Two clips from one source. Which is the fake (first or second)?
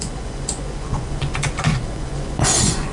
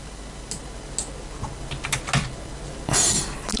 first